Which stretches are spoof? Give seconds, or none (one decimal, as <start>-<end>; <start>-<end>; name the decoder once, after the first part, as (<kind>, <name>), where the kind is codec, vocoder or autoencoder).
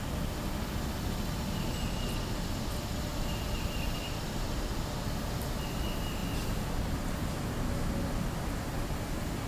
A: none